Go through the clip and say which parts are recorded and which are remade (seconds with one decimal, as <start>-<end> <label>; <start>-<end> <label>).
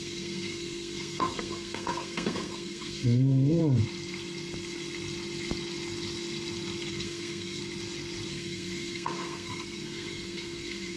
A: 0.0-3.6 remade; 3.6-6.9 recorded; 6.9-7.6 remade; 7.6-8.3 recorded; 8.3-11.0 remade